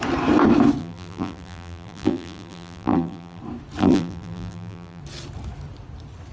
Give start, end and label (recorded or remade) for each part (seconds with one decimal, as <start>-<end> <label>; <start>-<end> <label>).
0.0-0.8 recorded; 0.8-3.4 remade; 3.4-3.8 recorded; 3.8-5.0 remade; 5.0-6.3 recorded